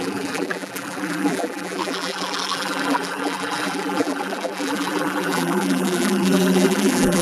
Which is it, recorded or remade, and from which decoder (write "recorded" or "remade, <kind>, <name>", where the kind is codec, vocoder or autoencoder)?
remade, vocoder, BigVGAN v2